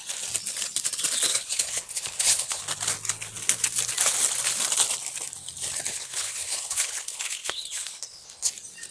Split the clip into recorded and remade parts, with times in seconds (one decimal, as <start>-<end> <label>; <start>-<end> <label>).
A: 0.0-1.3 recorded; 1.3-2.6 remade; 2.6-5.9 recorded; 5.9-8.5 remade; 8.5-8.9 recorded